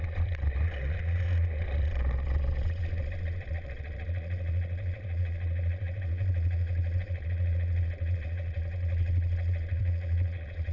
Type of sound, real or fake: fake